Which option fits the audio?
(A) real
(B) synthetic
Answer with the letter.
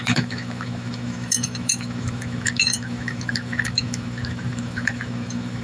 B